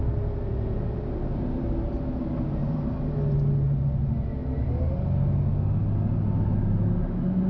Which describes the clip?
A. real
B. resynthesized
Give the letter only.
A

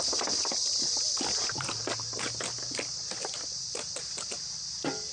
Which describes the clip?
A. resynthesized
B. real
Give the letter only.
B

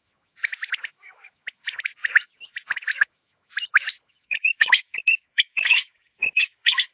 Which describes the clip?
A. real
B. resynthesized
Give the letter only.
B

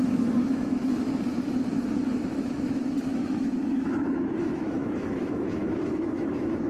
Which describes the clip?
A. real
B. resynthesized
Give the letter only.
B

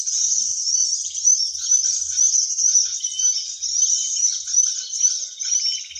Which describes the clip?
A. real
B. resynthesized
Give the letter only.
A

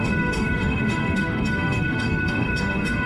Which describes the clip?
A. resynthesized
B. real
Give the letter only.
A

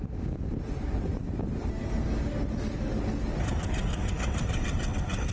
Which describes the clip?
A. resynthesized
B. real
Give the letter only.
B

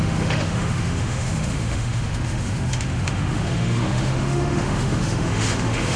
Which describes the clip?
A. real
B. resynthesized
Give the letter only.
B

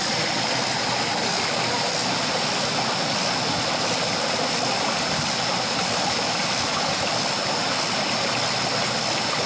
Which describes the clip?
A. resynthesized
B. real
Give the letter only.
B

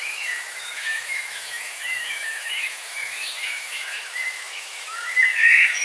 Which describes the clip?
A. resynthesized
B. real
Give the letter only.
A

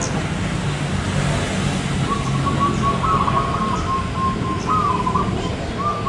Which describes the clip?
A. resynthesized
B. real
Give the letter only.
B